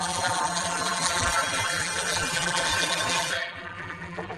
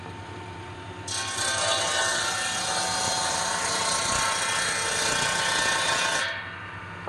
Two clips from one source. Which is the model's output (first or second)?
first